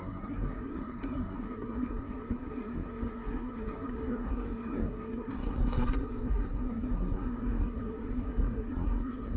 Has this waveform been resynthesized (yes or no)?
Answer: yes